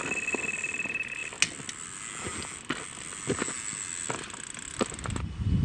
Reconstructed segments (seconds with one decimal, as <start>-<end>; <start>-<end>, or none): none